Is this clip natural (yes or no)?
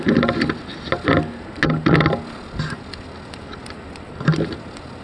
yes